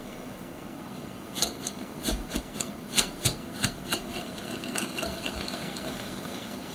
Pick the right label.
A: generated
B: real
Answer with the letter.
A